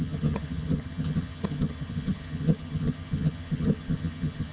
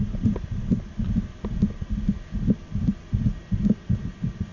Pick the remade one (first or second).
first